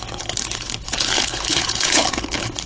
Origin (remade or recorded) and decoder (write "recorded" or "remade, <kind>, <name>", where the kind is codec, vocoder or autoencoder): remade, codec, HILCodec